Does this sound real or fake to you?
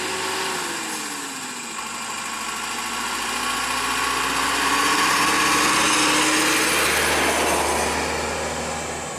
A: real